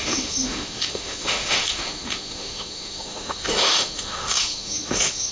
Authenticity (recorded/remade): remade